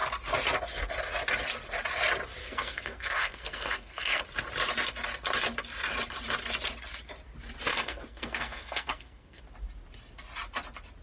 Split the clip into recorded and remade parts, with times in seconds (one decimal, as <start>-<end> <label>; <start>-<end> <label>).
0.0-2.4 recorded; 2.4-4.2 remade; 4.2-7.7 recorded; 7.7-9.4 remade; 9.4-11.0 recorded